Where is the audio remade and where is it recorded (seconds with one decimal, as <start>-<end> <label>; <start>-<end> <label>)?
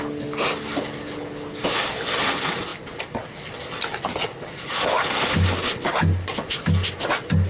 0.0-7.5 recorded